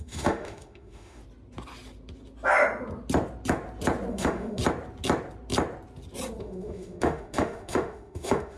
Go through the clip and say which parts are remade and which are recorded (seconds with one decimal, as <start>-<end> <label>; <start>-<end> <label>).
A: 0.0-1.2 remade; 1.2-4.1 recorded; 4.1-4.6 remade; 4.6-6.4 recorded; 6.4-8.6 remade